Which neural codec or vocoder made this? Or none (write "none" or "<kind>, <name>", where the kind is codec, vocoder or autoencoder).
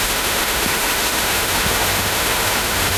autoencoder, DAC-VAE